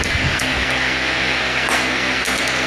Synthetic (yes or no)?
yes